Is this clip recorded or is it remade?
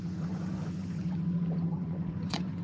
remade